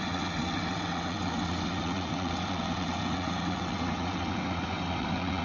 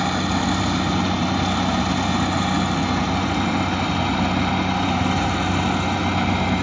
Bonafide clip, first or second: second